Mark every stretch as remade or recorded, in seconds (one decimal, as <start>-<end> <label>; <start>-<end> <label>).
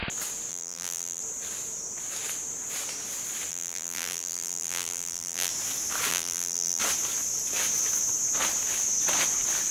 0.0-0.5 recorded; 0.5-1.2 remade; 1.2-3.5 recorded; 3.5-5.5 remade; 5.5-6.1 recorded; 6.1-6.8 remade; 6.8-9.7 recorded